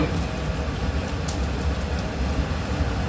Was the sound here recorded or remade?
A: recorded